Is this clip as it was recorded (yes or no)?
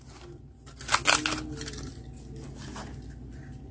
yes